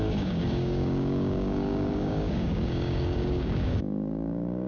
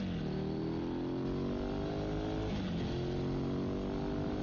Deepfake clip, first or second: first